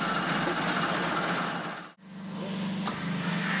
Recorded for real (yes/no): yes